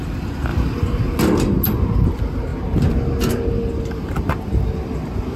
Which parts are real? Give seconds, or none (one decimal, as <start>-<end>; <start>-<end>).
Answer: 0.0-5.4